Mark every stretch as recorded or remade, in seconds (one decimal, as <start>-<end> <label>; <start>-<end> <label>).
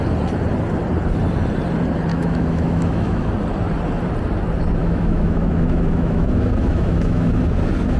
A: 0.0-2.1 recorded; 2.1-3.3 remade; 3.3-4.8 recorded; 4.8-7.4 remade; 7.4-8.0 recorded